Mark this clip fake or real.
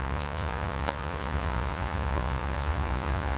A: fake